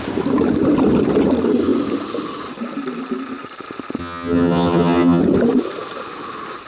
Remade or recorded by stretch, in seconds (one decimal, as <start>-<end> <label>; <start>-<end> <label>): 0.0-4.0 recorded; 4.0-5.2 remade; 5.2-6.7 recorded